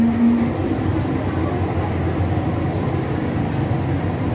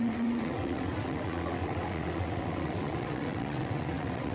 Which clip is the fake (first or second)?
second